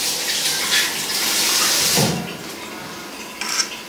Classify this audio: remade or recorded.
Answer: recorded